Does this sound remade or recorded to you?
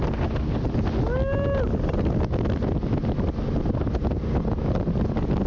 recorded